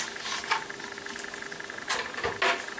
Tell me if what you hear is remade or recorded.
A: recorded